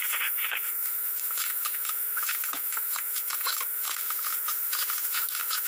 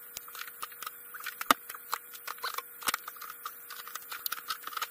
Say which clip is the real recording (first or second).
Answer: second